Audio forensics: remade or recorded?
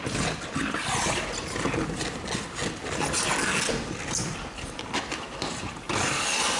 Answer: recorded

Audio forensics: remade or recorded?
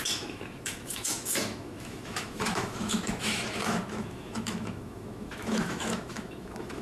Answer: remade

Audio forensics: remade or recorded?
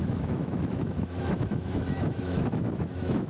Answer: remade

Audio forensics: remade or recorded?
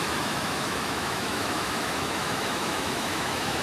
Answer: remade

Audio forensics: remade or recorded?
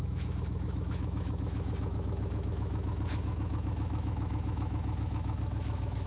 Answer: remade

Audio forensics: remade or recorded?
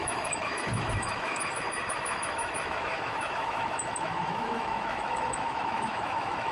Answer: remade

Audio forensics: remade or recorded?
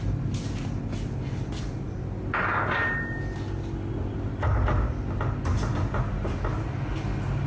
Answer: recorded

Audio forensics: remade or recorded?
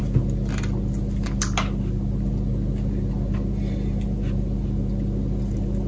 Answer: recorded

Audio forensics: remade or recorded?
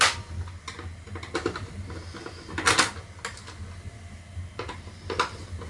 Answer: recorded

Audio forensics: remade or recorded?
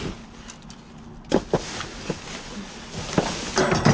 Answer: recorded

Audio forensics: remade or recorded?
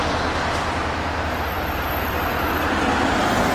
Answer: recorded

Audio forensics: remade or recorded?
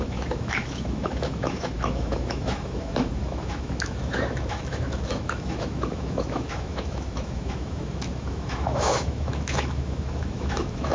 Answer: remade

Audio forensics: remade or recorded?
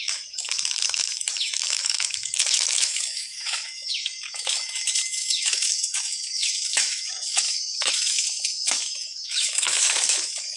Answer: remade